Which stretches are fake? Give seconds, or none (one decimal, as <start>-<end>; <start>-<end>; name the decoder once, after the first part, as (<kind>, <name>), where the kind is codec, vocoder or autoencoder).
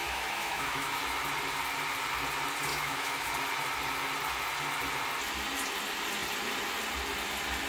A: 0.0-1.0 (autoencoder, DAC-VAE); 2.7-3.3